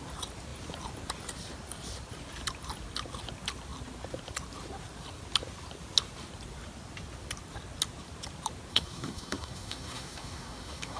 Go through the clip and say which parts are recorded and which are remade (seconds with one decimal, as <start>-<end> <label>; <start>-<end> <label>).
0.0-8.7 recorded; 8.7-11.0 remade